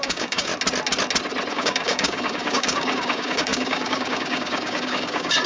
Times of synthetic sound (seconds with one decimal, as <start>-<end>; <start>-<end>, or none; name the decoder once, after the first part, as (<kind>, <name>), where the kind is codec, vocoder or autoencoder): 0.0-0.5 (codec, DAC); 1.5-5.5